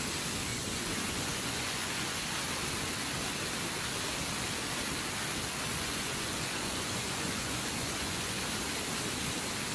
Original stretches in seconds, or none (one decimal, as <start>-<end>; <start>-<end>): 0.0-0.5; 2.2-5.7; 8.4-9.7